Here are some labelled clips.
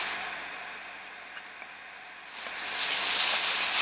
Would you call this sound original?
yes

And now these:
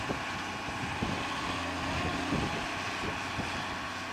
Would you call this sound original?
yes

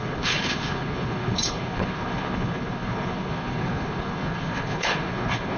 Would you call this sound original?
no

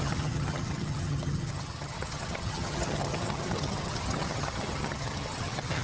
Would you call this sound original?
no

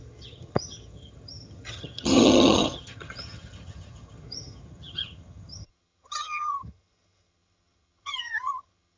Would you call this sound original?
no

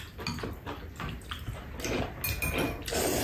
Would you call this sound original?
yes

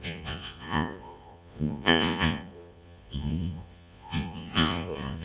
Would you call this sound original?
no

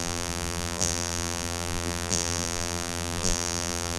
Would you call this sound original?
no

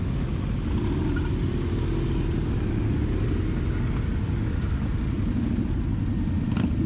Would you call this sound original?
yes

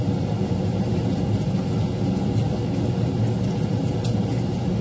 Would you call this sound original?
yes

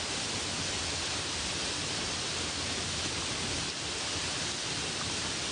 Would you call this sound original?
yes